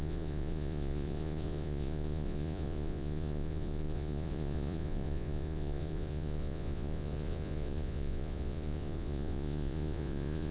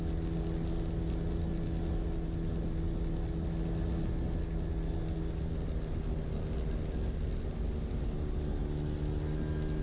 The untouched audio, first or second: second